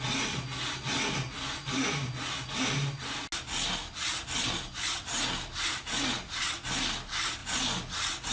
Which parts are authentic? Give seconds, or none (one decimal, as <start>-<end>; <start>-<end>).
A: 0.0-8.3

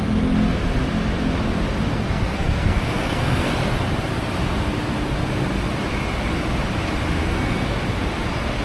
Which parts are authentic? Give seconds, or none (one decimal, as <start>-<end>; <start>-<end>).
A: 0.0-1.9; 3.7-7.2; 7.8-8.6

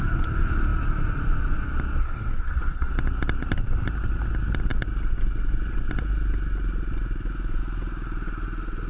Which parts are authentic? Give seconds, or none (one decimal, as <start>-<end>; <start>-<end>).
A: 0.0-2.0; 2.9-8.9

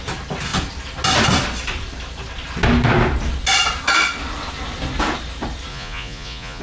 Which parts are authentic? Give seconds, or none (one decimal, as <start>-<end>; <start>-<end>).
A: 0.0-5.7